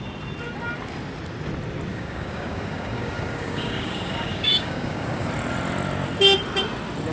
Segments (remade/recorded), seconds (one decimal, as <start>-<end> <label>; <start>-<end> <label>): 0.0-1.9 recorded; 1.9-5.3 remade; 5.3-7.1 recorded